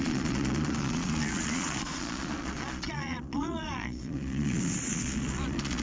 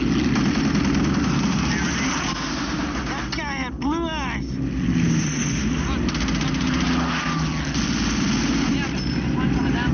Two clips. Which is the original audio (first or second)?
second